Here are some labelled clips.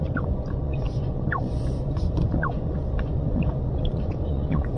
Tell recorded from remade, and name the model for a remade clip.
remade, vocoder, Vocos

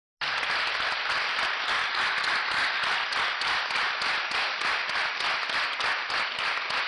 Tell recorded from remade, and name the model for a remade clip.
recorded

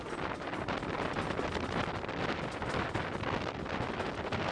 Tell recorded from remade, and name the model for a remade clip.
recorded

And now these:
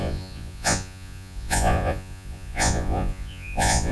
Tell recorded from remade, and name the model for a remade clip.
remade, vocoder, Vocos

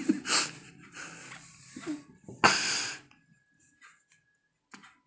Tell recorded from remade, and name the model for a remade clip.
recorded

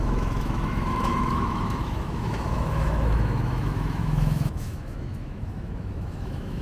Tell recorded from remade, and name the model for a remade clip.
remade, autoencoder, DAC-VAE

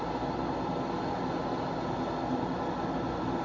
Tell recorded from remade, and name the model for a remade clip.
recorded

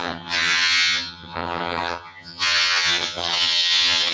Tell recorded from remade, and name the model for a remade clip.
remade, vocoder, HiFi-GAN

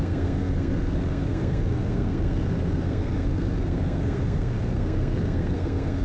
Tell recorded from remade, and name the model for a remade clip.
remade, codec, SNAC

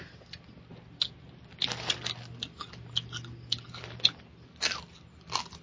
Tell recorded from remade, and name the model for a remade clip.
recorded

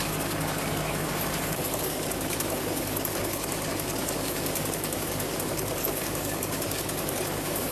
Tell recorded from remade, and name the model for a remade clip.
remade, codec, DAC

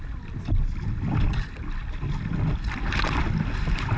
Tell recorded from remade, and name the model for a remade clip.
recorded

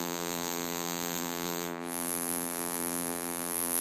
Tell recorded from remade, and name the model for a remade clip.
remade, vocoder, BigVGAN v2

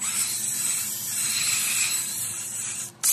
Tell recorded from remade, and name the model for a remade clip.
recorded